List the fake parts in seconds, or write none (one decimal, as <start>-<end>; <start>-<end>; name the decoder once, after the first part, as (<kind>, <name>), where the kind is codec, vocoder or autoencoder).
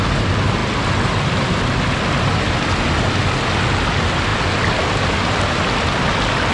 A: none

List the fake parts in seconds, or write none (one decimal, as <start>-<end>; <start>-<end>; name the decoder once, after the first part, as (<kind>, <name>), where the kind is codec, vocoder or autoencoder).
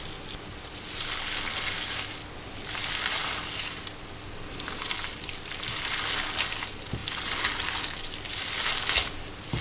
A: none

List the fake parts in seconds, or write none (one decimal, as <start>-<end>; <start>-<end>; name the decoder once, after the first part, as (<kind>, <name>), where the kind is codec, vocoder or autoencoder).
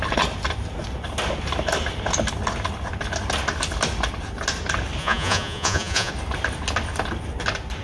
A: 5.0-6.1 (vocoder, Vocos)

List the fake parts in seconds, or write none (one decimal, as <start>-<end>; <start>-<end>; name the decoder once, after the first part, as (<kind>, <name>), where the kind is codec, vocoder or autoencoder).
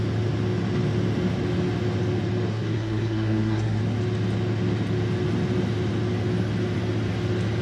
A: 2.5-3.8 (codec, SNAC)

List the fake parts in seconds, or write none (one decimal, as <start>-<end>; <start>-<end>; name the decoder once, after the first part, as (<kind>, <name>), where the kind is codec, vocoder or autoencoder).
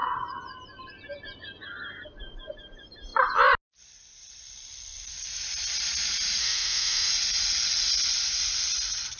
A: 6.4-7.1 (autoencoder, DAC-VAE)